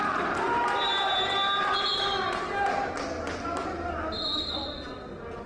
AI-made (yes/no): no